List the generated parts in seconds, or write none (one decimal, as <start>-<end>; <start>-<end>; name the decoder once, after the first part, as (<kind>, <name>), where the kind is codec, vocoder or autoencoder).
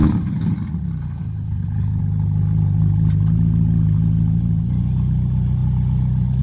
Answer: 0.0-0.5 (codec, HILCodec); 1.0-2.0